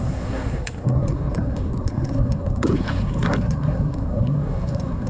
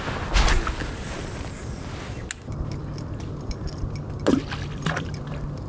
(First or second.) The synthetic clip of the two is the first